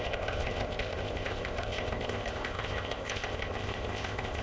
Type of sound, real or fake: fake